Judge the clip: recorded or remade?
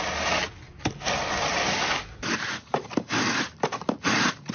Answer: recorded